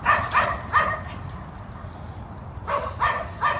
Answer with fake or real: real